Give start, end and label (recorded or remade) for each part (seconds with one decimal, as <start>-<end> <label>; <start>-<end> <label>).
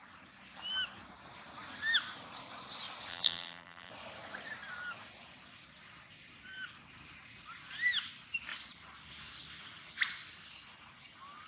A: 0.0-3.1 recorded; 3.1-3.9 remade; 3.9-11.5 recorded